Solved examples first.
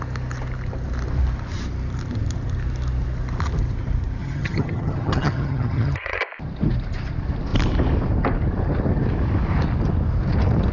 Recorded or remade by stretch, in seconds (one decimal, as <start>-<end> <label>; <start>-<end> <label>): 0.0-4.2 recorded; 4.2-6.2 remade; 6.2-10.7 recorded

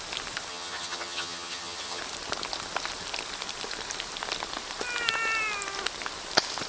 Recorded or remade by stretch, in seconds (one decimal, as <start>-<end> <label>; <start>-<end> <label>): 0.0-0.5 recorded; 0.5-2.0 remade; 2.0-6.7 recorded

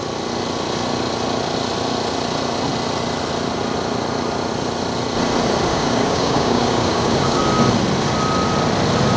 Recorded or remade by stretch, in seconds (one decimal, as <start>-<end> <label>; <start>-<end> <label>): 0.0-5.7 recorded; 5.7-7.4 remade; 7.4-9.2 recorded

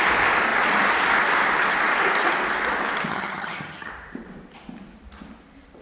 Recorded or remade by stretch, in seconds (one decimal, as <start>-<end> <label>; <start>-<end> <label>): 0.0-3.1 recorded; 3.1-3.9 remade; 3.9-5.8 recorded

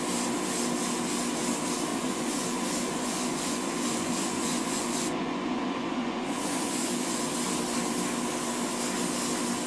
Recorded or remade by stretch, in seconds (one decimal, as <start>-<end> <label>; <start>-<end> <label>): 0.0-1.9 recorded; 1.9-7.2 remade; 7.2-9.7 recorded